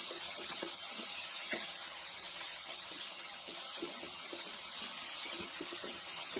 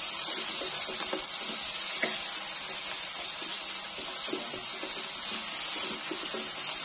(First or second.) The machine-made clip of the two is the first